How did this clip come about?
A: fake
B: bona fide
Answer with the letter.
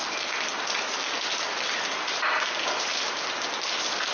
B